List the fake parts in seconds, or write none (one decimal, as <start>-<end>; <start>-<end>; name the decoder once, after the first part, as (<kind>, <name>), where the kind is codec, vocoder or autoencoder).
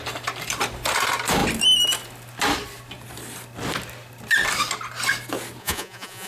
5.6-6.3 (vocoder, Vocos)